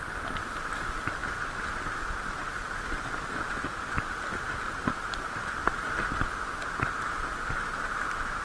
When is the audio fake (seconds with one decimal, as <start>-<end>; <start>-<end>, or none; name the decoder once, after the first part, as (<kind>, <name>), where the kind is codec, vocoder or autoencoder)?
none

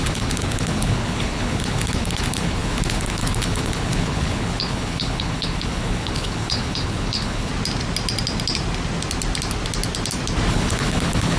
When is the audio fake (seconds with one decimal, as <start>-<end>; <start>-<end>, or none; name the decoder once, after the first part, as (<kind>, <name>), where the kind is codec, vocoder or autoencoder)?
0.0-7.5 (codec, HILCodec); 10.5-11.4

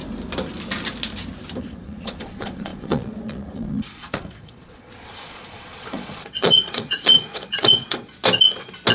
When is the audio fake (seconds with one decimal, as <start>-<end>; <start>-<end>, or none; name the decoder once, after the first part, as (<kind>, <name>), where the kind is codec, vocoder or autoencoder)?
1.6-8.2 (vocoder, Vocos)

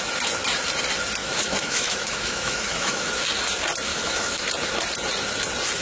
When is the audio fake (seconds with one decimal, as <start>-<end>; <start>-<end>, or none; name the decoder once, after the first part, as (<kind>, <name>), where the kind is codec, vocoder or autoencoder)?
1.2-3.1 (autoencoder, DAC-VAE); 3.9-4.4

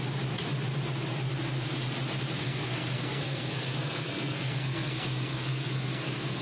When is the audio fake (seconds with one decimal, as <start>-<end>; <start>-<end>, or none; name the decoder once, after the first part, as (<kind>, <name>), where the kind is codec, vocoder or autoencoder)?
2.4-6.4 (codec, SNAC)

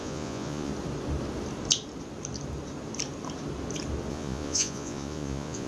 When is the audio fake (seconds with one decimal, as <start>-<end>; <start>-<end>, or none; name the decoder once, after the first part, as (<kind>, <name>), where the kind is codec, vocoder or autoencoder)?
0.0-0.7 (vocoder, Vocos); 4.1-5.7

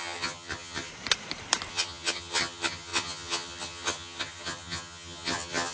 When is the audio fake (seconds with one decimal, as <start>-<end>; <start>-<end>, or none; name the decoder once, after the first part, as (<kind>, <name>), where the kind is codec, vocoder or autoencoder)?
0.0-0.9 (vocoder, HiFi-GAN); 1.7-5.7

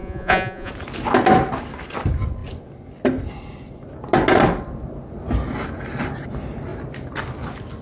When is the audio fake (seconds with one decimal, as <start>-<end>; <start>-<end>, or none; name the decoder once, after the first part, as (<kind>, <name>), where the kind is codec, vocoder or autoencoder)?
0.0-0.7 (vocoder, Vocos)